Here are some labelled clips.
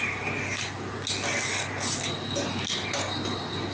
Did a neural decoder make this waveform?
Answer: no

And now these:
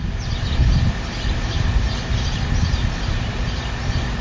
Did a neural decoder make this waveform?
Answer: no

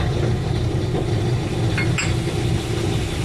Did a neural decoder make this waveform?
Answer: no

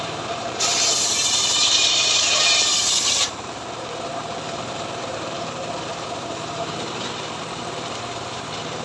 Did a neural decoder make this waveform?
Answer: yes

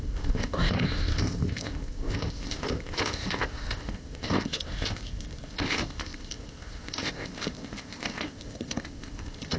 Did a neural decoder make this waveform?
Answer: yes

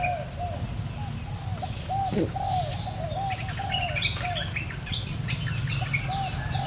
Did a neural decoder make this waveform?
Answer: no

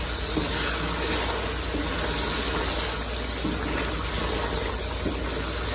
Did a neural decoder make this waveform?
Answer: no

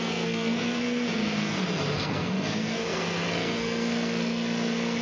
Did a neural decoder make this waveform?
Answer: yes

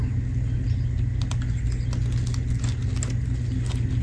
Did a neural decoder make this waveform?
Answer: no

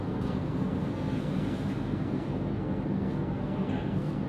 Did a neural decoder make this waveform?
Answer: yes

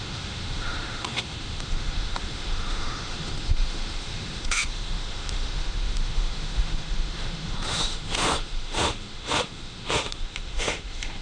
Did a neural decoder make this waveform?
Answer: yes